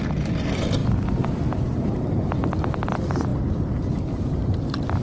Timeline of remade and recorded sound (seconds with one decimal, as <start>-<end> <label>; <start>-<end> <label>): 0.0-5.0 recorded